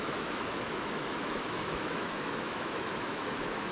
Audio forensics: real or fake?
fake